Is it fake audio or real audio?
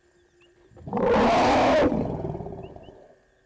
real